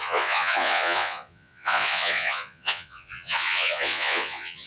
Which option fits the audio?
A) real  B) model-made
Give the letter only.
B